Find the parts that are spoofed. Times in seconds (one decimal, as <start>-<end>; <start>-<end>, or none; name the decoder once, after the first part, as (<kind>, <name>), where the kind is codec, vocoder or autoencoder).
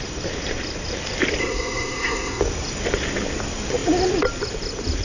1.4-2.4 (codec, SNAC)